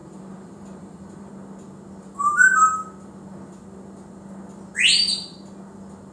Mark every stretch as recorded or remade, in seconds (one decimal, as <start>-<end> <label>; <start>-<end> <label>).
0.0-1.3 remade; 1.3-6.1 recorded